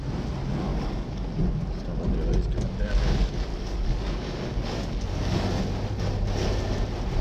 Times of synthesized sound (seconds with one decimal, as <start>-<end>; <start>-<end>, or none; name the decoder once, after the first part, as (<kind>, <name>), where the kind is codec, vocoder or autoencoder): 0.7-1.2 (codec, DAC); 3.5-5.6